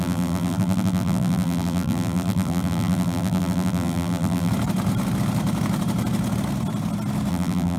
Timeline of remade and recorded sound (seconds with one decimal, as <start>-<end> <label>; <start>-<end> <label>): 0.0-4.5 remade; 4.5-7.3 recorded; 7.3-7.8 remade